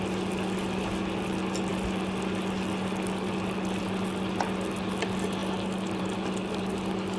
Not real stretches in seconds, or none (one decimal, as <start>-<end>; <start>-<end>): none